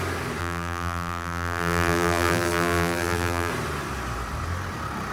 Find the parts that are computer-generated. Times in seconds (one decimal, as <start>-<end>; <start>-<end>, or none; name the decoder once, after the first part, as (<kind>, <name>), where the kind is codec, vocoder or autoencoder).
0.4-3.5 (vocoder, BigVGAN v2)

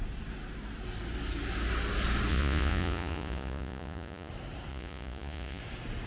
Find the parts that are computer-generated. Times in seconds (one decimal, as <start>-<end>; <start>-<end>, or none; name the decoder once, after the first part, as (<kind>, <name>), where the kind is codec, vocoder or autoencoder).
2.3-4.3 (vocoder, Vocos); 4.7-5.6